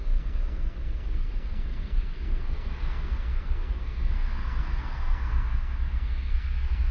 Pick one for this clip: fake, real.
fake